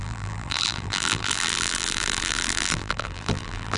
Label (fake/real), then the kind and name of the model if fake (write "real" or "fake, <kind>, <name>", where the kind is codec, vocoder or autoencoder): fake, vocoder, BigVGAN v2